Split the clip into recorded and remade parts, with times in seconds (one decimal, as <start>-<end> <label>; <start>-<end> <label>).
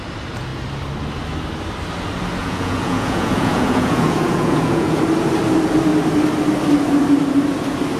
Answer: 0.0-2.4 recorded; 2.4-5.0 remade; 5.0-8.0 recorded